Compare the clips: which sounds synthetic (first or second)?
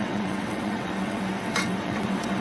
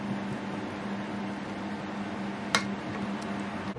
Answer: first